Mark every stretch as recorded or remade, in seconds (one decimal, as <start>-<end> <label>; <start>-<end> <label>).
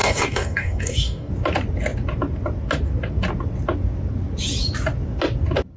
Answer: 0.0-1.3 remade; 1.3-5.8 recorded